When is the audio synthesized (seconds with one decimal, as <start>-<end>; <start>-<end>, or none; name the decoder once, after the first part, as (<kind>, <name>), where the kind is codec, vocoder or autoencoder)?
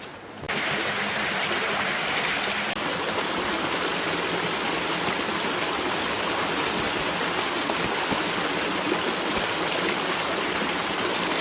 none